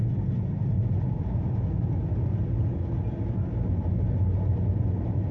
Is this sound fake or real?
real